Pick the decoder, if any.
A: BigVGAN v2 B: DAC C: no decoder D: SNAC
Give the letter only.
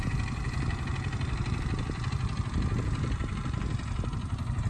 C